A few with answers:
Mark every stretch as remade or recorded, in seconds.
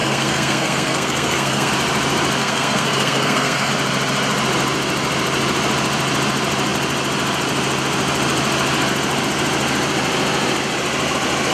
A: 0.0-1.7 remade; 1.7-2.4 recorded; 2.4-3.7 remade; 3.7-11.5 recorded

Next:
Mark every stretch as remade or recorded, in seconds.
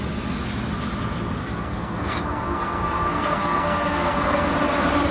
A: 0.0-1.4 recorded; 1.4-4.5 remade; 4.5-5.1 recorded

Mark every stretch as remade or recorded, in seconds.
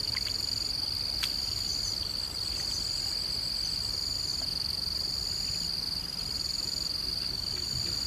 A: 0.0-8.1 recorded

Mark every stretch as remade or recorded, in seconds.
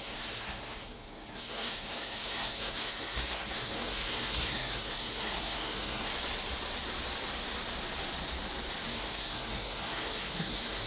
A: 0.0-6.1 remade; 6.1-8.9 recorded; 8.9-10.9 remade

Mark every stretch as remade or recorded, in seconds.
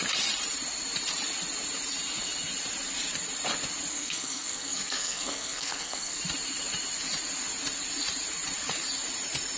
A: 0.0-3.9 recorded; 3.9-6.2 remade; 6.2-9.6 recorded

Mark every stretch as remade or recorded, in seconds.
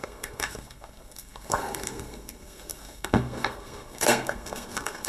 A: 0.0-5.1 remade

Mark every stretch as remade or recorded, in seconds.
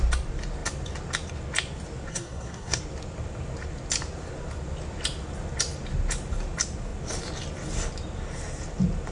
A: 0.0-2.1 recorded; 2.1-2.8 remade; 2.8-9.1 recorded